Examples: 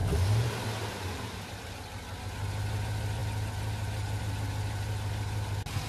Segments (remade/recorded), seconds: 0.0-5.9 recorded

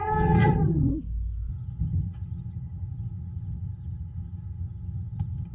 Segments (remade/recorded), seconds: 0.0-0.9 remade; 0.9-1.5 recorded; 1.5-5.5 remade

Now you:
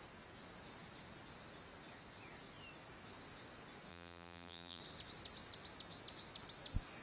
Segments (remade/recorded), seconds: 0.0-3.9 recorded; 3.9-4.8 remade; 4.8-7.0 recorded